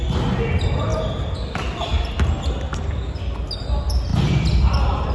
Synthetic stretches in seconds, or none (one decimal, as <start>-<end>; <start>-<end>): none